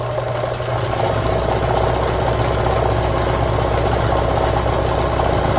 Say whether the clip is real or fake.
real